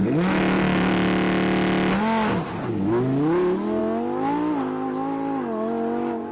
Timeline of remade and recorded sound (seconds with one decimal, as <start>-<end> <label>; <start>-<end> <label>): 0.0-6.3 recorded